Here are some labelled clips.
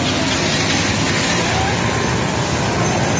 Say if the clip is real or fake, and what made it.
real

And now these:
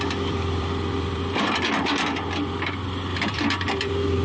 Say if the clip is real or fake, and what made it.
fake, vocoder, BigVGAN v2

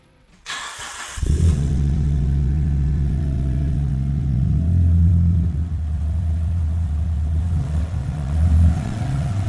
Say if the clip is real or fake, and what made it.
fake, vocoder, WaveNeXt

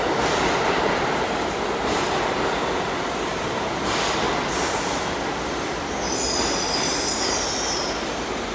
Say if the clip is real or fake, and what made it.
real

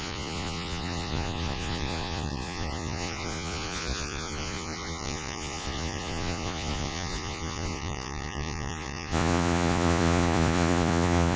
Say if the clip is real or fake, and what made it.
fake, vocoder, Vocos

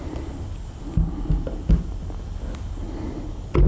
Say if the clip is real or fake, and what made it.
real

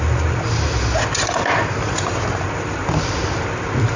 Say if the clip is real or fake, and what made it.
real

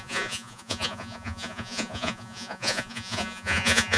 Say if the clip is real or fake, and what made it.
fake, vocoder, Vocos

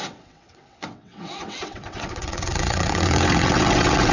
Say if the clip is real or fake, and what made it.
fake, vocoder, WaveNeXt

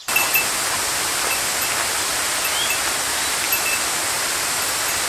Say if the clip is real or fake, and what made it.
real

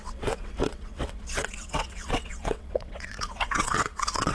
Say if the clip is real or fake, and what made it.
fake, vocoder, WaveNeXt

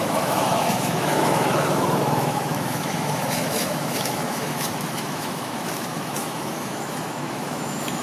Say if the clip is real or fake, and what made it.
fake, autoencoder, DAC-VAE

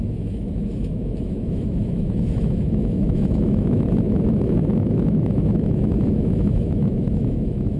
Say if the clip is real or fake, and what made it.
fake, autoencoder, DAC-VAE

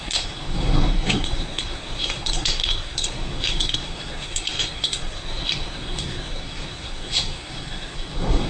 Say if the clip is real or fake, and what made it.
fake, codec, SNAC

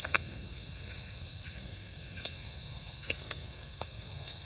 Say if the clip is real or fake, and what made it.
fake, codec, SNAC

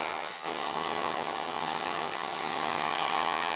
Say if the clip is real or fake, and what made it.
fake, vocoder, HiFi-GAN